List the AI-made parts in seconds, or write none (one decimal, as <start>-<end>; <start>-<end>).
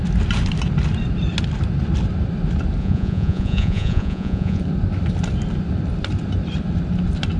2.8-4.6